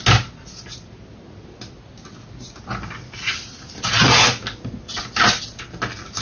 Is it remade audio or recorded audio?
recorded